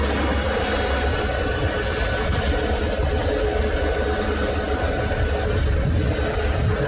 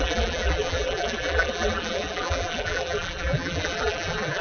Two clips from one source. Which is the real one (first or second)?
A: first